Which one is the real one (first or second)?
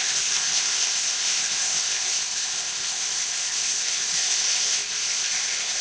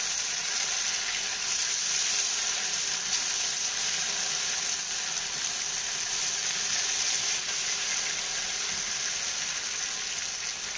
second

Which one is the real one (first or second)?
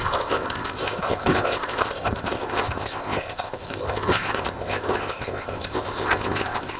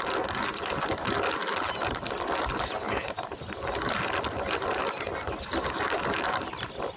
second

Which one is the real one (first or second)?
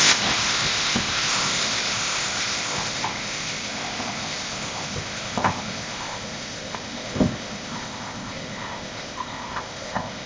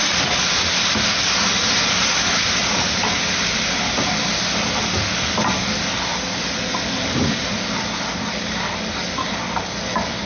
second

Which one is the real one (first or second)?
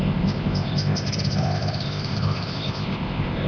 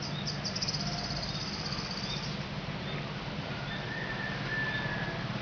second